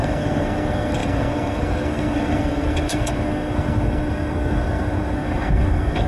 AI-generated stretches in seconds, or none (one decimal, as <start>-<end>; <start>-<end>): 0.0-6.1